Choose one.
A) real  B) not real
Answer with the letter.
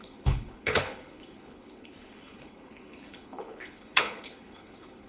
B